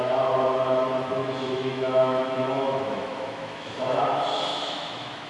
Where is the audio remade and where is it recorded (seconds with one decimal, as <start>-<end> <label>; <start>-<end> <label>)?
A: 0.0-1.2 recorded; 1.2-4.0 remade; 4.0-4.5 recorded; 4.5-5.3 remade